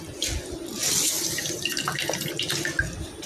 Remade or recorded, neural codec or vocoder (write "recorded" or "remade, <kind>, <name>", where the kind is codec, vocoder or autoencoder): recorded